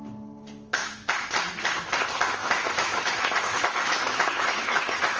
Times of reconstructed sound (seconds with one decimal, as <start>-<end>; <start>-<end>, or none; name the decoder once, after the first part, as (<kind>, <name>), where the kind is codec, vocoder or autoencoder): 0.8-1.3 (autoencoder, DAC-VAE); 2.4-5.2